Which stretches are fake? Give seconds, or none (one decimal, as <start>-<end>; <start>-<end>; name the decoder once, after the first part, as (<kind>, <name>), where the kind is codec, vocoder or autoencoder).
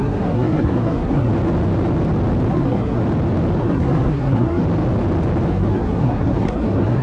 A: 0.0-1.3 (codec, SNAC); 2.5-3.0; 3.6-4.6; 5.5-7.0